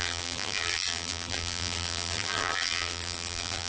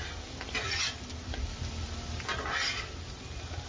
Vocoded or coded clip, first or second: first